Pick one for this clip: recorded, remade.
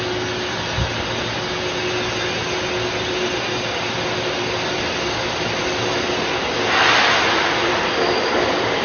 recorded